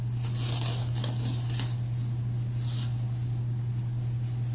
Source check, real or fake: real